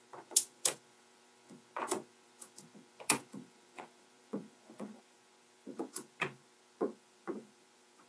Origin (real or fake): fake